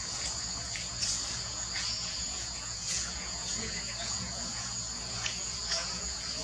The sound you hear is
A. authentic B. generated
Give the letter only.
B